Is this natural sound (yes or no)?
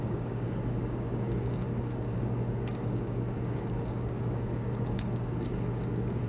no